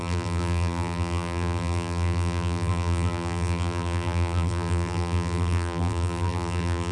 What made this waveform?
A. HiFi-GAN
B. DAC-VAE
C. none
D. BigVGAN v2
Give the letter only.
D